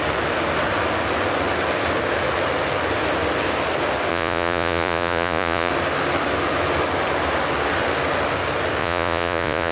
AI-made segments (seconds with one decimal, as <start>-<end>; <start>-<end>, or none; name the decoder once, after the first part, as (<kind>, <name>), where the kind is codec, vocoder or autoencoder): 4.1-5.7 (vocoder, Vocos); 8.8-9.7